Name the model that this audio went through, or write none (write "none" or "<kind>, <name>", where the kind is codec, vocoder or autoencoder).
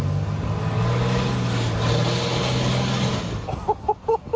none